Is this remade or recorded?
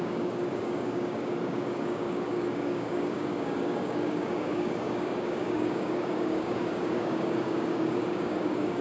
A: remade